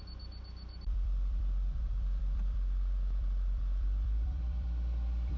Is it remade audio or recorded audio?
remade